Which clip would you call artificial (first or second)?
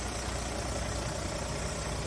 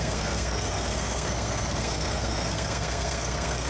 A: second